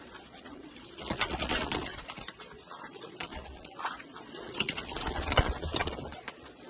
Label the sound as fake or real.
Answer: fake